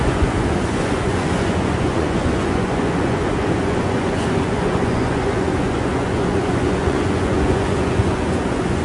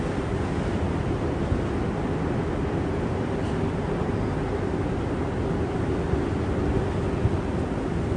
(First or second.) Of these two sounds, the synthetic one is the first